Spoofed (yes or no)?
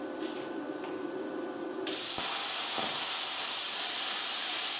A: yes